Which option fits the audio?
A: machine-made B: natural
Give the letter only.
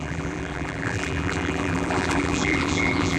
A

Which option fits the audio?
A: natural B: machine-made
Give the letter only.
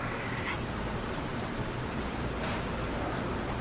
B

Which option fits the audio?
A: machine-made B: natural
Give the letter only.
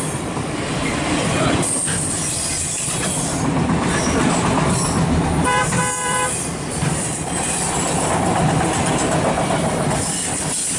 A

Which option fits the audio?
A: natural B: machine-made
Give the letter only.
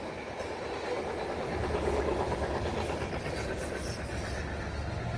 A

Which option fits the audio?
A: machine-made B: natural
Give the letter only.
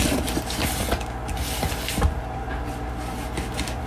B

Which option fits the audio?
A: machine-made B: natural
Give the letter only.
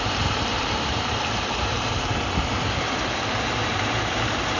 A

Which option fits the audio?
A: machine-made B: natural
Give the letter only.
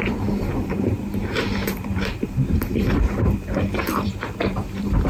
A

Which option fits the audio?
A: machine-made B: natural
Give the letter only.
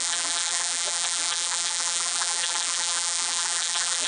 A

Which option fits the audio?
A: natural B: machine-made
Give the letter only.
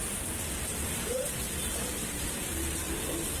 B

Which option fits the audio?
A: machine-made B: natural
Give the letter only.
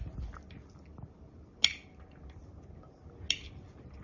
B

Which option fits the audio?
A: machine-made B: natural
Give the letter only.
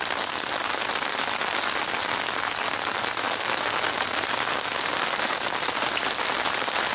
B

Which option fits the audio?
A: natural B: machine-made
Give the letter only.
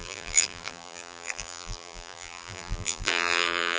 B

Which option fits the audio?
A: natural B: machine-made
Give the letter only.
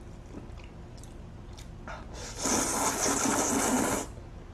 A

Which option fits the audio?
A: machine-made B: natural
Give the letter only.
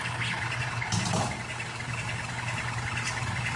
A